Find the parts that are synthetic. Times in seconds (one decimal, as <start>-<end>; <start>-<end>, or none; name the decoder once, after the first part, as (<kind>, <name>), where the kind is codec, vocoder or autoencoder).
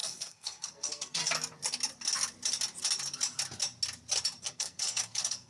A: 0.0-1.2 (codec, SNAC); 4.4-5.5